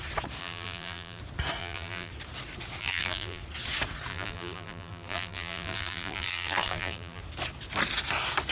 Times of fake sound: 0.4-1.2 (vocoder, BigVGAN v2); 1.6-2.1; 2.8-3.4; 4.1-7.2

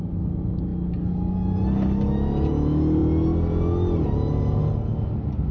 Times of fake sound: none

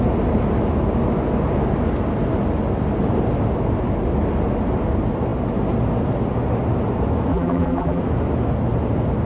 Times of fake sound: 7.3-8.0 (vocoder, BigVGAN v2)

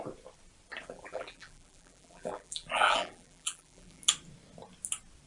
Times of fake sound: 0.8-4.0 (vocoder, BigVGAN v2)

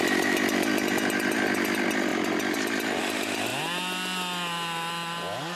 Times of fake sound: none

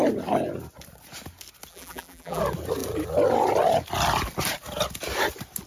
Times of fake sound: 1.7-2.4 (vocoder, BigVGAN v2)

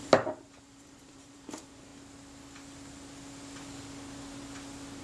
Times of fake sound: 0.6-1.9 (vocoder, BigVGAN v2)

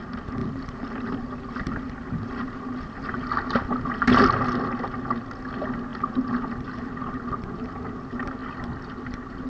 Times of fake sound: 0.4-4.2 (vocoder, BigVGAN v2); 5.9-7.3; 8.4-9.5